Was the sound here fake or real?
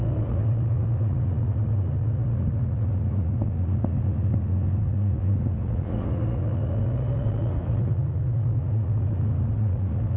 fake